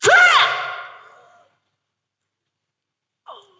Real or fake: real